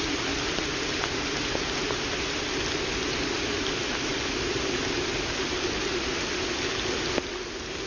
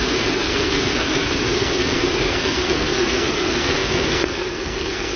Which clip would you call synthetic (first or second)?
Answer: second